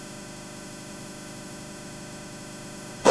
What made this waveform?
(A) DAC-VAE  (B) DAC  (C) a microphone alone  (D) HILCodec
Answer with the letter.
A